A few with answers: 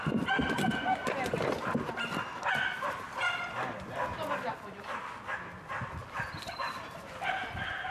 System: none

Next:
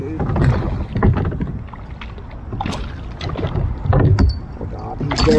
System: none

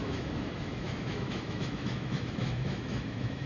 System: autoencoder, DAC-VAE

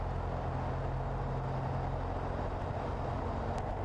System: none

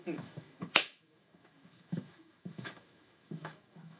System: autoencoder, DAC-VAE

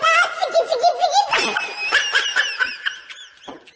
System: none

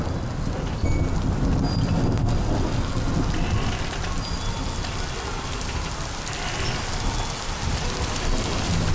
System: none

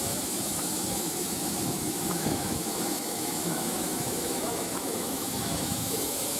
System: autoencoder, DAC-VAE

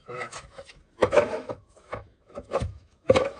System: autoencoder, DAC-VAE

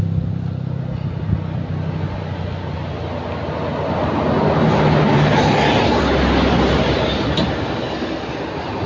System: none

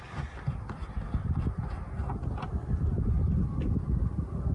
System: none